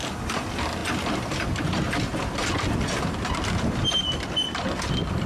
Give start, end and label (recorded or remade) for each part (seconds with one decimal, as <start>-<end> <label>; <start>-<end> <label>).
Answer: 0.0-5.3 recorded